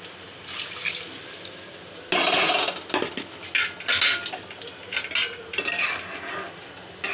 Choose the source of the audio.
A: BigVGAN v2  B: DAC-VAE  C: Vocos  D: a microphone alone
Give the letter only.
D